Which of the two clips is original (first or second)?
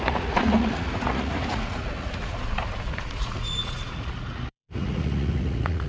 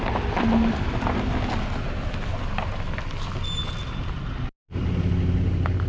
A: second